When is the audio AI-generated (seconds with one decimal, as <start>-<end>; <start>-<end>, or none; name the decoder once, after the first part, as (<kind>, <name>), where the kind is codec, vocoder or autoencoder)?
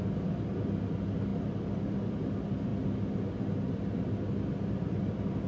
none